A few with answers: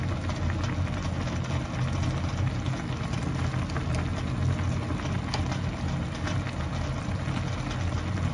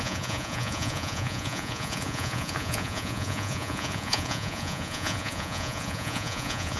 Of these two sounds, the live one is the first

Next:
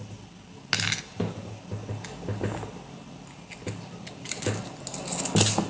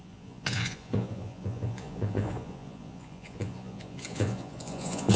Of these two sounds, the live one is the first